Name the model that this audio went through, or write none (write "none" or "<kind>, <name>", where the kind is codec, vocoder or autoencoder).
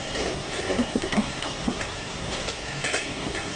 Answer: codec, SNAC